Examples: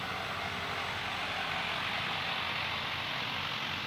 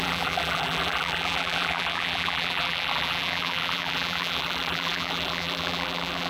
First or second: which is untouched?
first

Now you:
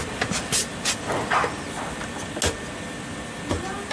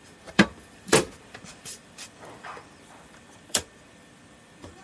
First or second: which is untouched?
first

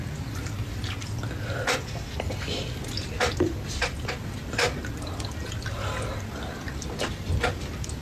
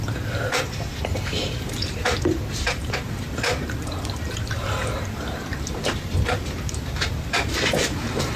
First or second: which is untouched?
first